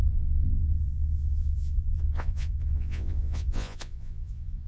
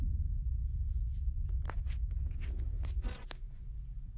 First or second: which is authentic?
second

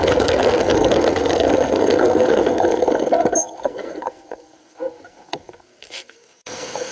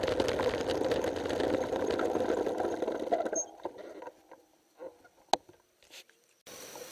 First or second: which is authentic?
second